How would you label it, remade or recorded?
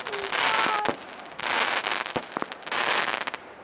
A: recorded